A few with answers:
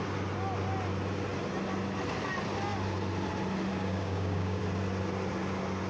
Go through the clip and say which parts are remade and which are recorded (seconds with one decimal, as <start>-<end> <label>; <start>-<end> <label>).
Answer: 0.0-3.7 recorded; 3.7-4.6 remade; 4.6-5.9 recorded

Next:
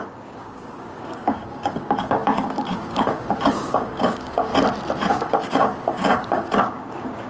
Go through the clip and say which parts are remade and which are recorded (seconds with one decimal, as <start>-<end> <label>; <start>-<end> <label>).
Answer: 0.0-4.5 remade; 4.5-5.1 recorded; 5.1-7.3 remade

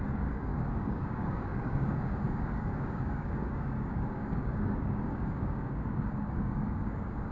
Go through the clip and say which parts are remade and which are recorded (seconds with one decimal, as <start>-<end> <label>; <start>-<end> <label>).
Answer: 0.0-7.3 remade